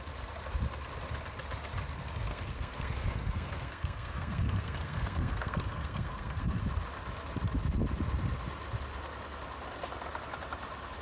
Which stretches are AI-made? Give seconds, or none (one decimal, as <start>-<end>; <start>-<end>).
2.3-6.6